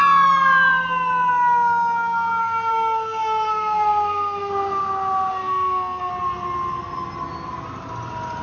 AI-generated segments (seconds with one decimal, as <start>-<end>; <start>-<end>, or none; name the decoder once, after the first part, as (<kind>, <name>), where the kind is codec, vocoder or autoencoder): 2.4-4.5 (codec, SNAC); 5.3-6.1